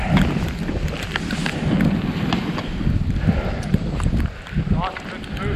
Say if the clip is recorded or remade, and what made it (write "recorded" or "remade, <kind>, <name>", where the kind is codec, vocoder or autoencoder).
recorded